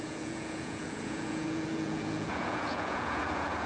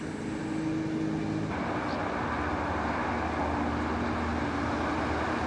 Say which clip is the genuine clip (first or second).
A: second